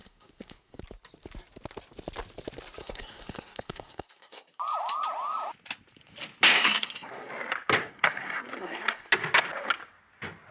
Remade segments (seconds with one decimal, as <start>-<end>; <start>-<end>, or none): 0.0-0.8; 2.8-4.6; 6.5-7.3; 7.8-9.1

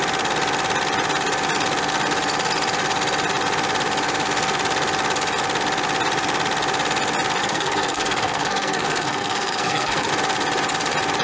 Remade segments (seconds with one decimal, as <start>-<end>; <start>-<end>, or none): 7.4-10.1

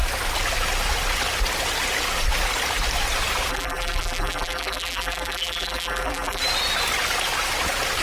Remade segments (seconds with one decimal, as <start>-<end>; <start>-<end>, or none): 3.5-6.4